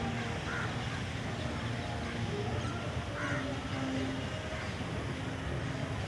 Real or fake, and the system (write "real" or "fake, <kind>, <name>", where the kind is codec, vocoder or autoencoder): fake, vocoder, BigVGAN v2